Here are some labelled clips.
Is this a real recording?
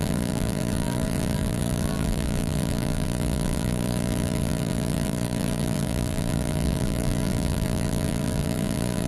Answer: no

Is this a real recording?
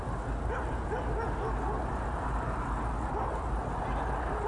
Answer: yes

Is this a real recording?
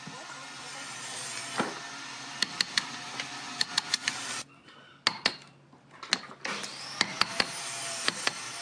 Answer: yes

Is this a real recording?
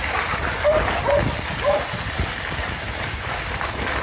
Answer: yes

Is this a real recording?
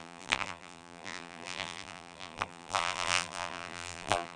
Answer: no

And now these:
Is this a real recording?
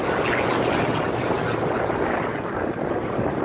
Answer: yes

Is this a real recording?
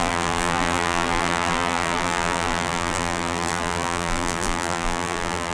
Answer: no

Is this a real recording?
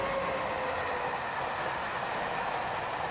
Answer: yes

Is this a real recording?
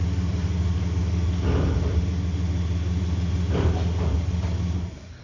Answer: yes